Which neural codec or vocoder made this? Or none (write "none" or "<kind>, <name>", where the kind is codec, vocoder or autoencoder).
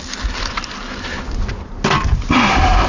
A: none